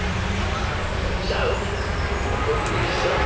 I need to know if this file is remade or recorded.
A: remade